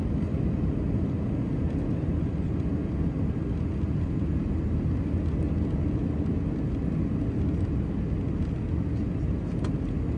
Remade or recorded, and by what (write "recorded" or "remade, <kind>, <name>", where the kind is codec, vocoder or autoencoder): recorded